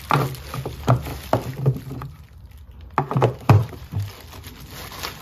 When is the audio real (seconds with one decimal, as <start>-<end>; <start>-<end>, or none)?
0.0-3.6; 4.1-5.2